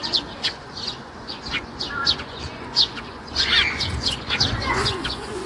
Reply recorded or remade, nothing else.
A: remade